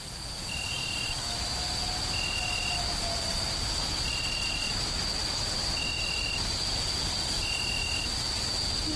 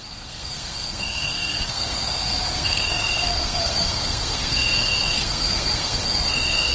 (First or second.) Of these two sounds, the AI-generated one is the second